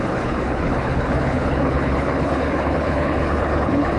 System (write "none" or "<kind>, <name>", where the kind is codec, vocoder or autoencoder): codec, HILCodec